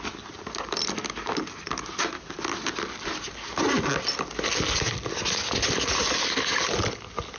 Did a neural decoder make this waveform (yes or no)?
no